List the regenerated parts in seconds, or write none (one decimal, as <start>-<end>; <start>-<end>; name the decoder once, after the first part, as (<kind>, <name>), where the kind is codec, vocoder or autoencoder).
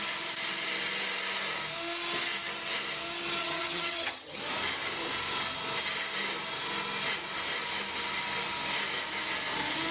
3.4-4.4 (vocoder, HiFi-GAN)